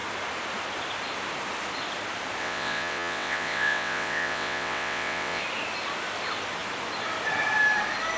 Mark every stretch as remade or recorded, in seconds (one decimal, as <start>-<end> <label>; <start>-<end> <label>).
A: 0.0-2.4 recorded; 2.4-5.4 remade; 5.4-8.2 recorded